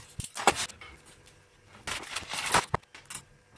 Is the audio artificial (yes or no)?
no